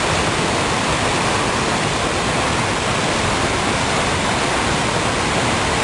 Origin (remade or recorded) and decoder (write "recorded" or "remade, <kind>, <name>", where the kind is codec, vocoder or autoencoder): recorded